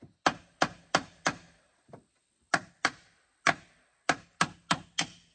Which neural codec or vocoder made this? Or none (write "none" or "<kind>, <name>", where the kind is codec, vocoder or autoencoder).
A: none